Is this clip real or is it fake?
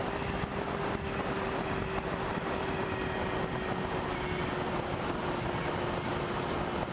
real